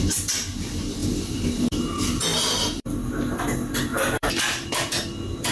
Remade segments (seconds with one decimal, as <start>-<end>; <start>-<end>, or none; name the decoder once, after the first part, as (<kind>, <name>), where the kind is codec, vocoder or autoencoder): 1.0-1.7 (vocoder, BigVGAN v2); 2.3-3.1; 3.9-5.5